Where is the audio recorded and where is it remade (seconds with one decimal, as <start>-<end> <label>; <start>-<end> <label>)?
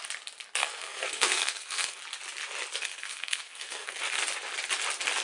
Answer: 0.0-0.6 recorded; 0.6-2.0 remade; 2.0-2.8 recorded; 2.8-4.0 remade; 4.0-5.2 recorded